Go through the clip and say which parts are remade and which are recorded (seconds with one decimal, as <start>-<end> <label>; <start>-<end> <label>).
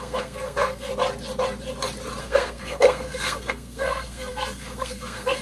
0.0-0.9 remade; 0.9-2.2 recorded; 2.2-5.4 remade